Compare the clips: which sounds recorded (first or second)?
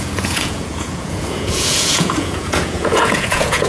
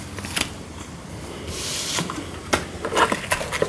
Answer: second